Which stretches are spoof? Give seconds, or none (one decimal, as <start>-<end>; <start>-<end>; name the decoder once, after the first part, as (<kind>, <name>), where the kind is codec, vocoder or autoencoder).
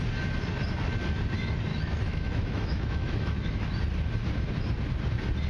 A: 1.7-3.7 (autoencoder, DAC-VAE)